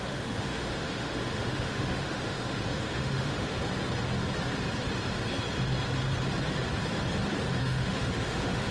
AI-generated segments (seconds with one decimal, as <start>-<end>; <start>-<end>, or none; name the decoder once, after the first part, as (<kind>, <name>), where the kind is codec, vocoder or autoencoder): 0.0-3.6 (autoencoder, DAC-VAE); 7.6-8.7